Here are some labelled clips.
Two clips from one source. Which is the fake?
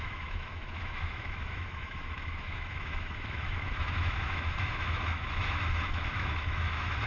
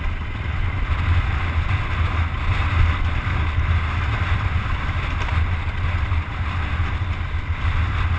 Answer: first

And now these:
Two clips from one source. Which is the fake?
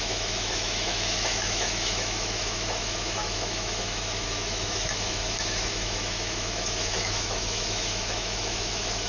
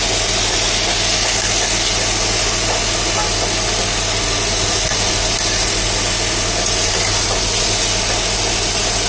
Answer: first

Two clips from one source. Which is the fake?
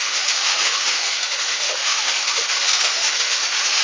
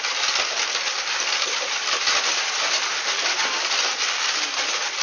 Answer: first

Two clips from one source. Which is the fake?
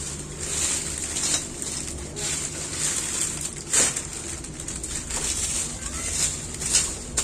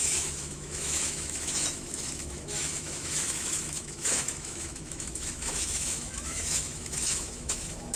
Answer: second